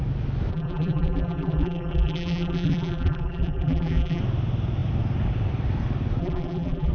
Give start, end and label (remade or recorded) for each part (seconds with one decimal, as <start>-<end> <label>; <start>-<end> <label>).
0.0-0.5 recorded; 0.5-4.2 remade; 4.2-6.2 recorded; 6.2-6.9 remade

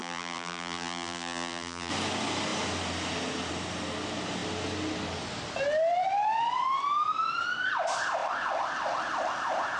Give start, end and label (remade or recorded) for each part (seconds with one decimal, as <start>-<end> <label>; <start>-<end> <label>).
0.0-1.9 remade; 1.9-9.8 recorded

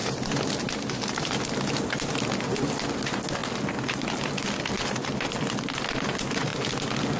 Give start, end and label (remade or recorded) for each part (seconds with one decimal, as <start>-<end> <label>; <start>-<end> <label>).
0.0-7.2 recorded